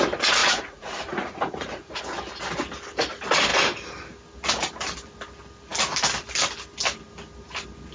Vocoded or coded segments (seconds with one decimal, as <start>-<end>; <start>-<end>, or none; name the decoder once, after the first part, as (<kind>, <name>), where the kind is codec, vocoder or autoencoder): 0.4-2.0 (vocoder, Vocos)